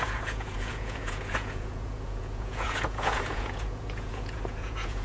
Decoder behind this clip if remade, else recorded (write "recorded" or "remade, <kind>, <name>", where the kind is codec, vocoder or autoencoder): remade, vocoder, Vocos